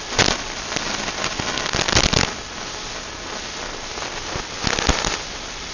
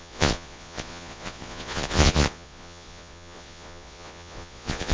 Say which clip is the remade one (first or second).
second